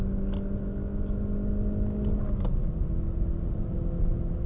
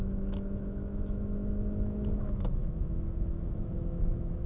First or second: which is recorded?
first